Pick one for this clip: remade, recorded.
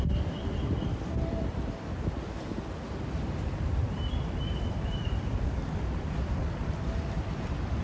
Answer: remade